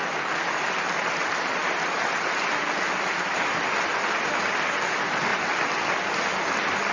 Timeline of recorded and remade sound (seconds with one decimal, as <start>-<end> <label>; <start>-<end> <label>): 0.0-6.9 recorded

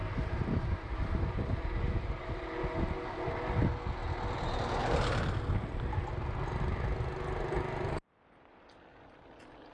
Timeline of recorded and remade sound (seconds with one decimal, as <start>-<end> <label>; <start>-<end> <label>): 0.0-2.2 remade; 2.2-4.8 recorded; 4.8-5.4 remade; 5.4-9.7 recorded

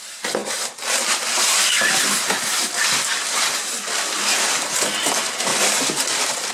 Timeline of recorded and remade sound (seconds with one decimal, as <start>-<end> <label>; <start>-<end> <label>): 0.0-5.5 recorded; 5.5-6.5 remade

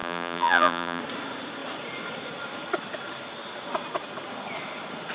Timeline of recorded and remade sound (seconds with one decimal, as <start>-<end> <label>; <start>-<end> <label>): 0.0-1.0 remade; 1.0-5.1 recorded